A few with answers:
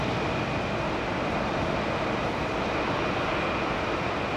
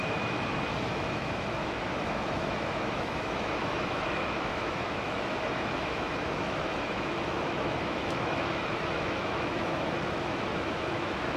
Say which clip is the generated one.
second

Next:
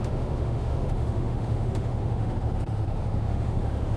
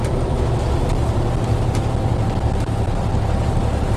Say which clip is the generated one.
first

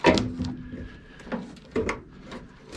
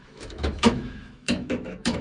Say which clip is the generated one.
second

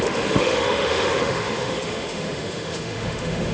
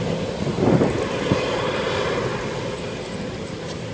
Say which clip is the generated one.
first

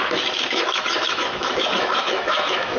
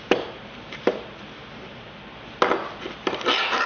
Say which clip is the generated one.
first